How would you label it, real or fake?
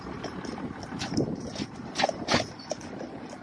real